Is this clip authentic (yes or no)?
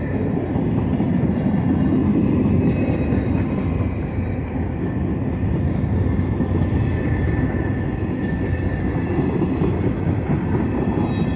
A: yes